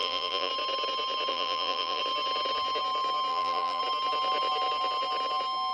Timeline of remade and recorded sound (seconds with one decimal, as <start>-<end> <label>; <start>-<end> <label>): 0.0-0.5 remade; 0.5-1.3 recorded; 1.3-2.0 remade; 2.0-3.3 recorded; 3.3-3.8 remade; 3.8-5.7 recorded